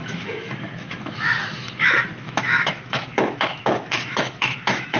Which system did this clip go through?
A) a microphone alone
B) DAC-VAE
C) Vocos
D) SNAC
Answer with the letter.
B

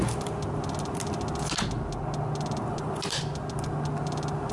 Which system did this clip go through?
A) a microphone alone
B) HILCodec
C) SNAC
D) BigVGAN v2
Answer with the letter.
A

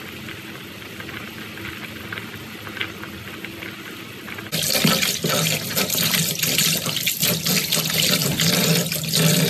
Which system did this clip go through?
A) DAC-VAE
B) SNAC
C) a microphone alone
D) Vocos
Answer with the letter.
C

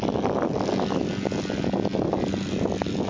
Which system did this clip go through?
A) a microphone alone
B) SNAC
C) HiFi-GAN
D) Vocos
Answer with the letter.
A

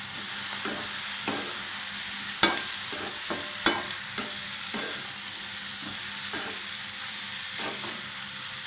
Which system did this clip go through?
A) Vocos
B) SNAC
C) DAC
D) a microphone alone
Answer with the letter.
D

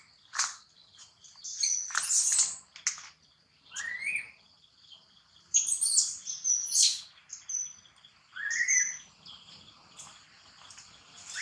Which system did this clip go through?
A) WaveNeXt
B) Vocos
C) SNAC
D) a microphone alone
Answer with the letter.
D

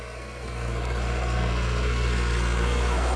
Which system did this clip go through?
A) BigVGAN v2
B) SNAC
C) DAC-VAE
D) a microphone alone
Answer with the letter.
B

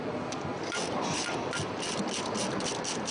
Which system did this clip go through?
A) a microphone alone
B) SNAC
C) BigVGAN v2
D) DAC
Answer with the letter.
C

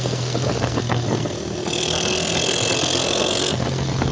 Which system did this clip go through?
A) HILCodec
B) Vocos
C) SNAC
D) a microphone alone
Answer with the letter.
C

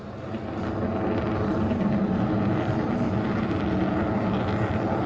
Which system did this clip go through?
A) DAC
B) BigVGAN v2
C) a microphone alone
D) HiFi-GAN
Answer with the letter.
C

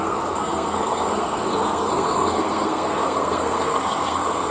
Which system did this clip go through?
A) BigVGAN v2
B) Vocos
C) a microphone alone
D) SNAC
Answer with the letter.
D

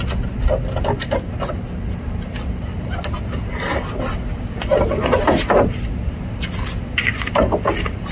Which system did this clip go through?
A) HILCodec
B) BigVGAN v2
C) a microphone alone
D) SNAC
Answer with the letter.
C